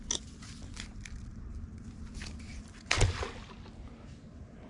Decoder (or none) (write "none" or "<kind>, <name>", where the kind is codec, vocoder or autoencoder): none